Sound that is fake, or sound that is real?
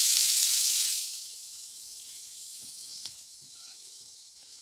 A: fake